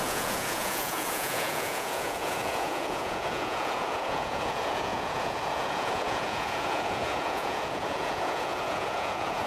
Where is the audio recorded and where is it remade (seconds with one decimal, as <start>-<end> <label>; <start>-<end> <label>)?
0.0-9.5 remade